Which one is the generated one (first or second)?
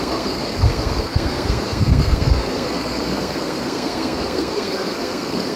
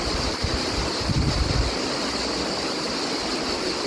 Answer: first